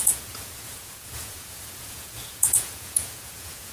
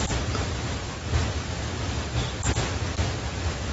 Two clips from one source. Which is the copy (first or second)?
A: first